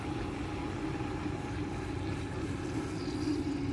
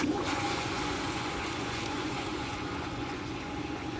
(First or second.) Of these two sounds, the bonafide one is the first